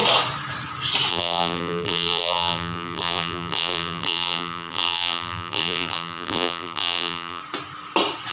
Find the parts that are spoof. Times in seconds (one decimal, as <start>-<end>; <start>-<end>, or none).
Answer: 1.1-7.4